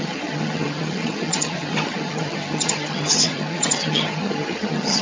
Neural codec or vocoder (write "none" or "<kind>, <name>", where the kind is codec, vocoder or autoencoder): vocoder, HiFi-GAN